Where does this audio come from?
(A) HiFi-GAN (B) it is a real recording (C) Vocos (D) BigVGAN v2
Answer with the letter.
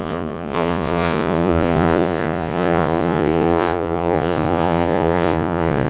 C